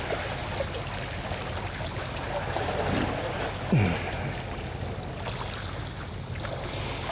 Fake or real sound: real